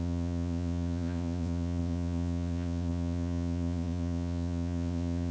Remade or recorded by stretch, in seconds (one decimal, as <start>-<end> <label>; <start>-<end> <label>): 0.0-5.3 remade